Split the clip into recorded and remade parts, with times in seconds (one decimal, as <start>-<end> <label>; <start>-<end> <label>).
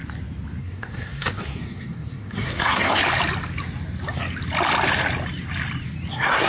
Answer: 0.0-0.6 recorded; 0.6-3.0 remade; 3.0-6.1 recorded; 6.1-6.5 remade